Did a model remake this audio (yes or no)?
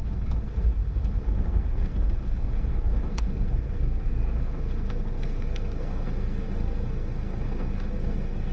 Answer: yes